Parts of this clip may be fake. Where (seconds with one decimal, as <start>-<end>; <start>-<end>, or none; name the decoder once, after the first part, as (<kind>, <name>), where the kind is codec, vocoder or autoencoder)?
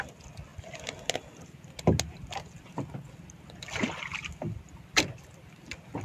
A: none